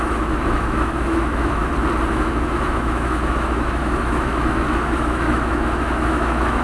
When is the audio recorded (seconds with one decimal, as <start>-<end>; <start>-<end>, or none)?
1.6-2.1